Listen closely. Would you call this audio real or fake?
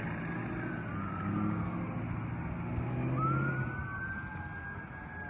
real